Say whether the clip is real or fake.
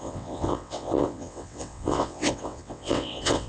fake